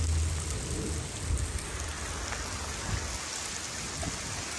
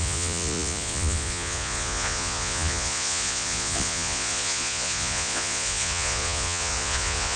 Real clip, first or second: first